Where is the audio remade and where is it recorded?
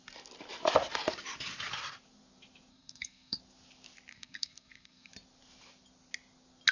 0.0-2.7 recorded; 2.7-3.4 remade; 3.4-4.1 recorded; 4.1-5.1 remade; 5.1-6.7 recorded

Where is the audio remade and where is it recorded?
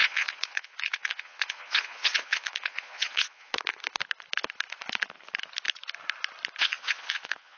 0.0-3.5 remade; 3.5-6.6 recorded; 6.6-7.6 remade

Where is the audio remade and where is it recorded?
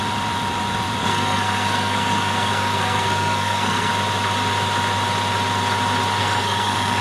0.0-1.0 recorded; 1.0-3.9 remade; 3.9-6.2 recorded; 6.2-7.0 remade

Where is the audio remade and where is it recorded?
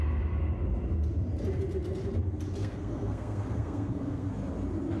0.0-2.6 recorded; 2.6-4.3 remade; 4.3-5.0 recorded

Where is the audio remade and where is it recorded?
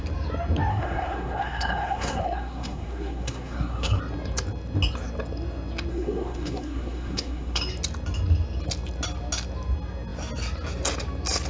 0.0-0.7 recorded; 0.7-4.0 remade; 4.0-5.9 recorded; 5.9-7.6 remade; 7.6-11.5 recorded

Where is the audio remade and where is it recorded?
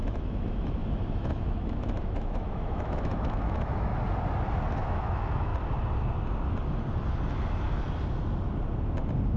0.0-3.9 remade; 3.9-4.7 recorded; 4.7-5.5 remade; 5.5-9.4 recorded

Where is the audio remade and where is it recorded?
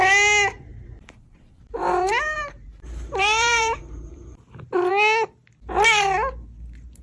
0.0-0.7 recorded; 0.7-4.9 remade; 4.9-7.0 recorded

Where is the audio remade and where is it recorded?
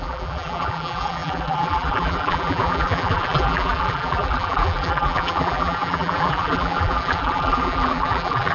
0.0-8.5 remade